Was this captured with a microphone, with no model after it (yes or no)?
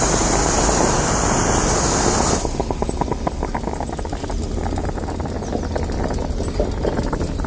yes